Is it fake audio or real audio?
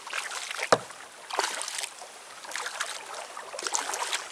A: real